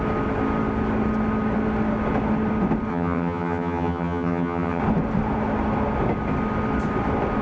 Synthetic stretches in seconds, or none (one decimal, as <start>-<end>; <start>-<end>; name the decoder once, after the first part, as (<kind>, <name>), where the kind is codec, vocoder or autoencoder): 2.9-4.8 (vocoder, HiFi-GAN)